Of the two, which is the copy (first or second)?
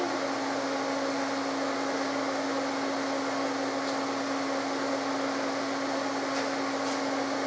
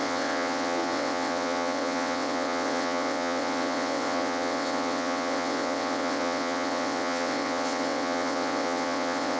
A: second